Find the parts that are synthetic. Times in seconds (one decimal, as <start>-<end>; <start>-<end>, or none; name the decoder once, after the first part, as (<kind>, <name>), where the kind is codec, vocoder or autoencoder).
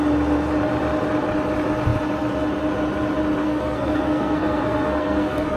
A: 3.4-5.6 (codec, SNAC)